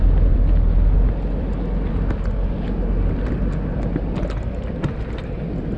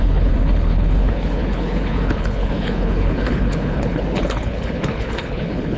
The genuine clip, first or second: first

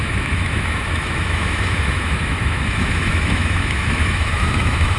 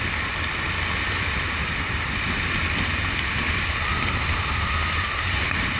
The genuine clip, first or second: second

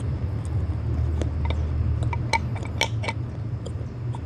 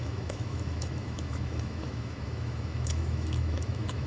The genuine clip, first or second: first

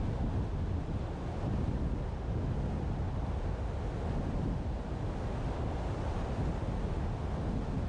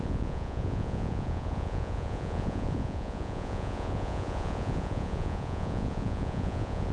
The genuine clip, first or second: first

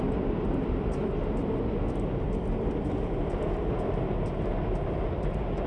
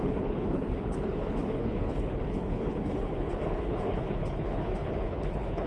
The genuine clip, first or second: first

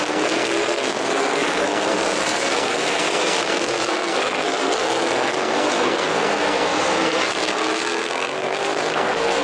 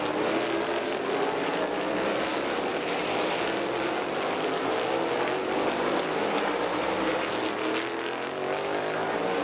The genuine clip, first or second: second